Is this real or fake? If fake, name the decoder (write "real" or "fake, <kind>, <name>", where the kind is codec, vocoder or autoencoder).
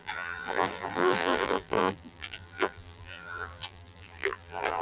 fake, vocoder, BigVGAN v2